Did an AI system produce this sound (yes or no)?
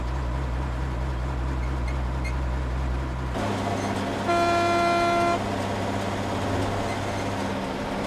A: no